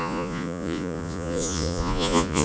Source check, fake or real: fake